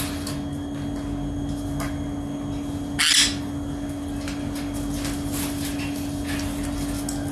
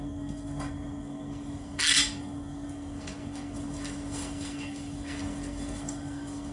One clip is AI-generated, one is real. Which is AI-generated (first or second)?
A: second